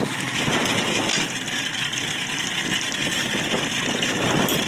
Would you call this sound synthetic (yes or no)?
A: no